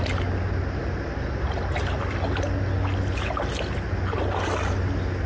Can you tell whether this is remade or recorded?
recorded